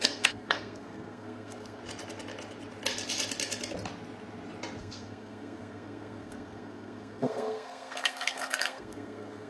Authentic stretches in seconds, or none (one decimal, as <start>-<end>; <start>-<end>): 1.8-4.8